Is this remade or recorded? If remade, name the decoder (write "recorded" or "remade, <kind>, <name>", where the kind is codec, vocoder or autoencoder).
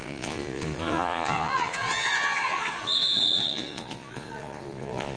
remade, vocoder, Vocos